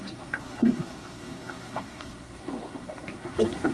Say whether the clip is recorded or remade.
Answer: remade